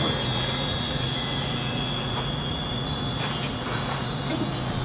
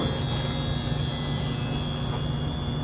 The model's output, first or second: first